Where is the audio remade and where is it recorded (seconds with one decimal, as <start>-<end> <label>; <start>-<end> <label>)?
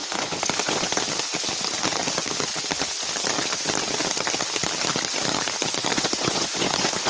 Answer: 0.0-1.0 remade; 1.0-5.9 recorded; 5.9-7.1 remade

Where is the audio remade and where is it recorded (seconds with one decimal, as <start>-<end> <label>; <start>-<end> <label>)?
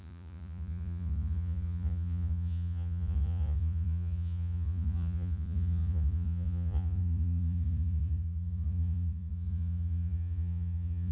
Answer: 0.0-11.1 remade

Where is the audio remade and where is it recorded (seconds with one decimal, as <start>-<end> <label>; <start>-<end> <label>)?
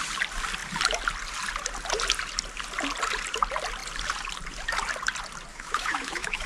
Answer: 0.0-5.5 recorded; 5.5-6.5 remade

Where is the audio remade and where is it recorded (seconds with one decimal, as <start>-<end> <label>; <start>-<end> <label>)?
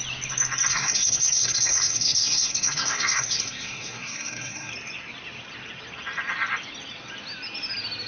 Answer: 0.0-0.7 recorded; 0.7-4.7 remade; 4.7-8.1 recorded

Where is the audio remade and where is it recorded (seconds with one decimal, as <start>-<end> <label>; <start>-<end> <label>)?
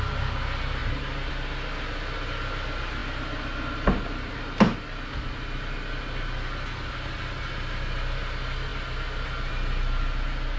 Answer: 0.0-10.6 recorded